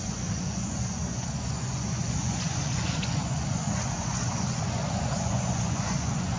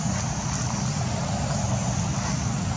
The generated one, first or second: first